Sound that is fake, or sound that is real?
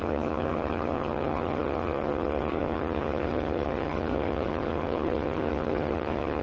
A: fake